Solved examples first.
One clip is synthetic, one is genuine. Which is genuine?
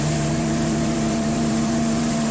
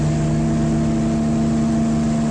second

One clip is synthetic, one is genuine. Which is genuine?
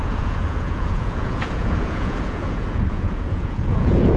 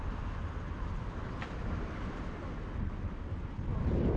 second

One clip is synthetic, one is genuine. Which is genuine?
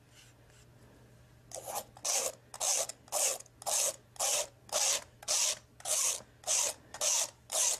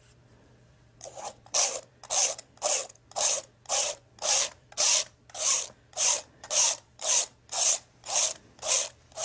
first